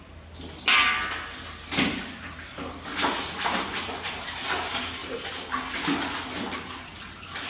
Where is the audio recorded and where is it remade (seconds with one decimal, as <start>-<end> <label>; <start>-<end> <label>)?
0.0-5.0 remade; 5.0-5.7 recorded; 5.7-7.5 remade